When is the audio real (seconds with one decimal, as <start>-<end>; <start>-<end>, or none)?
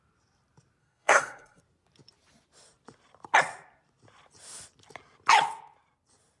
0.0-0.8; 1.6-6.4